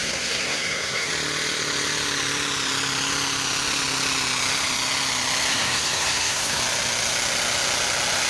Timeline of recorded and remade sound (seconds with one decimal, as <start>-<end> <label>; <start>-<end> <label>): 0.0-1.1 remade; 1.1-5.5 recorded; 5.5-6.6 remade; 6.6-8.3 recorded